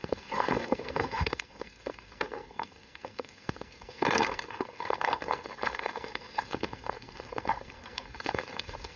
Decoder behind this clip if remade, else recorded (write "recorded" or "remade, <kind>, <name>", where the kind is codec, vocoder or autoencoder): remade, codec, SNAC